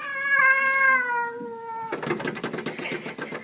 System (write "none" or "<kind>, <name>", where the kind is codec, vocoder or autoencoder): none